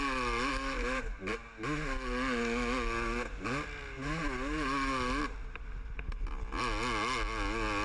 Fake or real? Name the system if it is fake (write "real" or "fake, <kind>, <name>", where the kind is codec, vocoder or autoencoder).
real